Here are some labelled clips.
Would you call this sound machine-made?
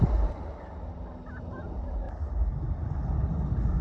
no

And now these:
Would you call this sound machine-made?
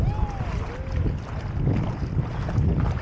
no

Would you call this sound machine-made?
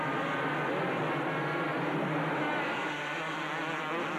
no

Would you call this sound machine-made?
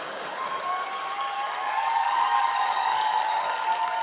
yes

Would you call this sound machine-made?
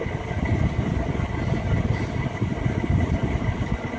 no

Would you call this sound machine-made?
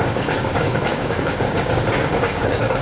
yes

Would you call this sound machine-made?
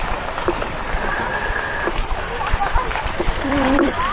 yes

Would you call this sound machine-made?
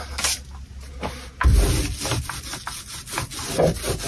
no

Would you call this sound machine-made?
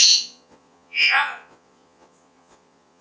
yes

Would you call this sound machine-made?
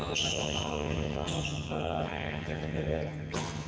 yes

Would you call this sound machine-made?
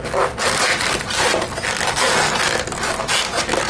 no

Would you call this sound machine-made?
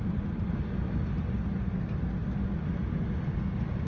no